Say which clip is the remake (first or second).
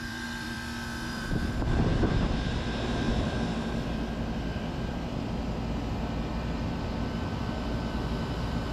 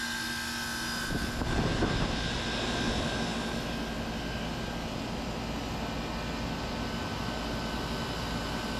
first